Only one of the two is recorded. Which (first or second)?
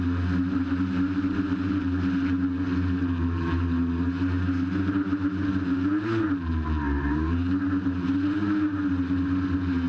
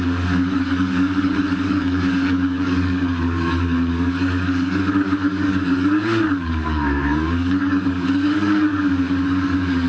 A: first